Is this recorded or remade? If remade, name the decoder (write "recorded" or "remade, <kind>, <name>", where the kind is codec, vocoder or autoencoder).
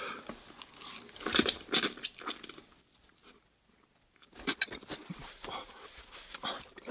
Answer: recorded